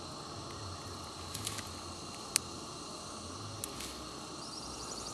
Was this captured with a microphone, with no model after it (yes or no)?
yes